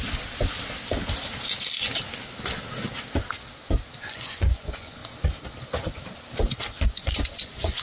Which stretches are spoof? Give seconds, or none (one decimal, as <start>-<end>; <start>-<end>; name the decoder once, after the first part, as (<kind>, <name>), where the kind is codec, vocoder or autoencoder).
4.0-5.0 (vocoder, Vocos); 6.9-7.8